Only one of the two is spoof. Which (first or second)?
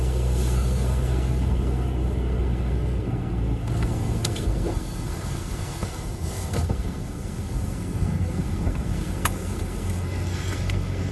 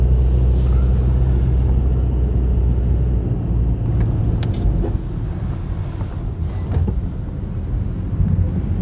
first